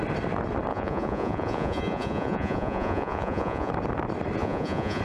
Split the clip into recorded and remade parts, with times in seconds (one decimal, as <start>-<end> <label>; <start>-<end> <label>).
0.0-0.7 recorded; 0.7-3.7 remade; 3.7-4.4 recorded; 4.4-5.0 remade